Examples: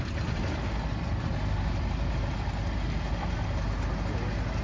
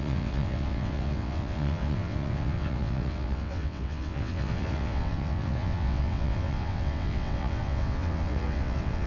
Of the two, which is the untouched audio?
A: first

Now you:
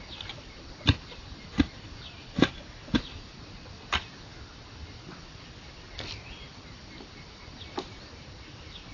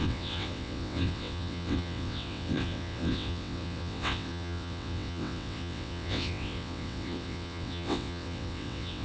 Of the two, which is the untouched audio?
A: first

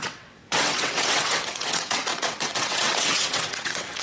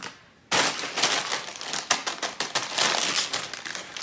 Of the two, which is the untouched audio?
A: second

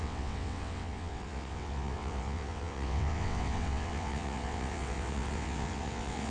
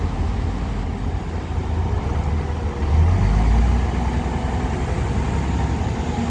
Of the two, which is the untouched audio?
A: second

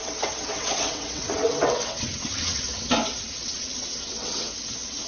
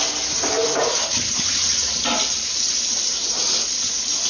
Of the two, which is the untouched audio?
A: second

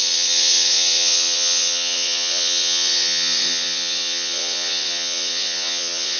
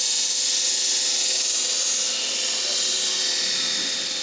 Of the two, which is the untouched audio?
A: second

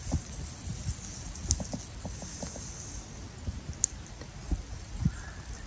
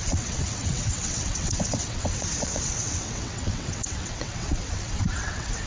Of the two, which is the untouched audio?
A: first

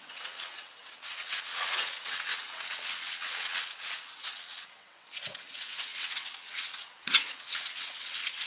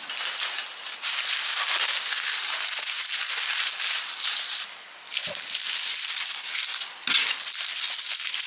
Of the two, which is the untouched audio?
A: second